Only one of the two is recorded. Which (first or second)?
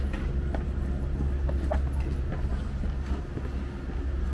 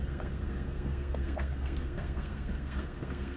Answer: first